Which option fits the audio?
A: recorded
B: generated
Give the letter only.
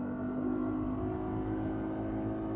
A